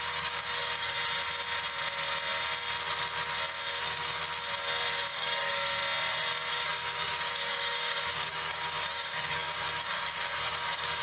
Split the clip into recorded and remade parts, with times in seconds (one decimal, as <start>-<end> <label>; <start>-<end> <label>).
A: 0.0-1.0 remade; 1.0-3.8 recorded; 3.8-4.2 remade; 4.2-4.9 recorded; 4.9-5.8 remade; 5.8-6.5 recorded; 6.5-11.0 remade